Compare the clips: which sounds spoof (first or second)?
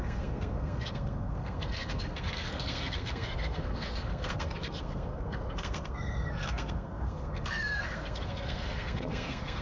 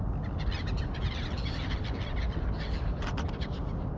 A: first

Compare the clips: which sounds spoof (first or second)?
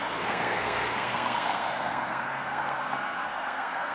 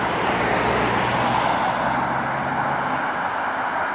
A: first